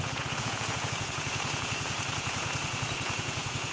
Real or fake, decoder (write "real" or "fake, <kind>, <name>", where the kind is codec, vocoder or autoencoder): fake, vocoder, Vocos